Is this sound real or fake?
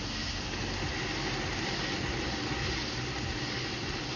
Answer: real